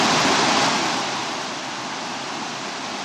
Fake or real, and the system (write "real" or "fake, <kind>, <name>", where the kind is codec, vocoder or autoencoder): real